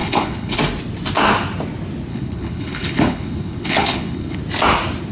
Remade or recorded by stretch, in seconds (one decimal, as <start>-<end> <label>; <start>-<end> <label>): 0.0-0.6 remade; 0.6-2.1 recorded; 2.1-4.4 remade; 4.4-5.1 recorded